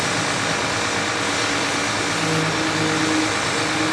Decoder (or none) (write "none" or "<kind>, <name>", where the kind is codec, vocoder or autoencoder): none